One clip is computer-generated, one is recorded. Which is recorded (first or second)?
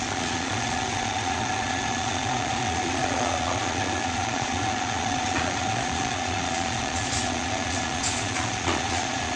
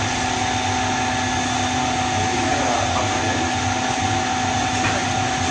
second